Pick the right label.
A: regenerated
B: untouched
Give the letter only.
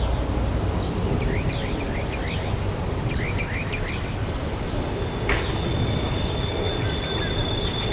B